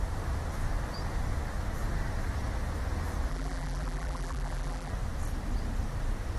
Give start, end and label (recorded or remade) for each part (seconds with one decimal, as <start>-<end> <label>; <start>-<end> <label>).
0.0-3.3 recorded; 3.3-4.9 remade; 4.9-6.4 recorded